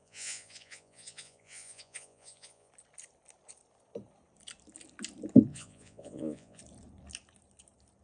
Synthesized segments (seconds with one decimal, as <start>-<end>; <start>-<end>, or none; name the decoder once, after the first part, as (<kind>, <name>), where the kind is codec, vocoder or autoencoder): 0.0-2.7 (vocoder, Vocos); 5.5-6.6